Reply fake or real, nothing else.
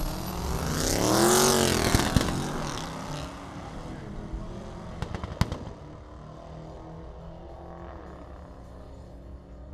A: real